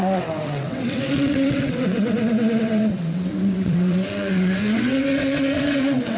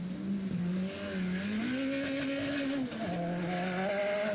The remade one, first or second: first